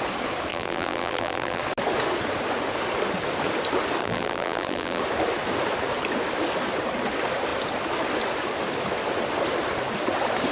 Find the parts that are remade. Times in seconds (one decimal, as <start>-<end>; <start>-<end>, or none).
0.5-1.6; 4.0-5.0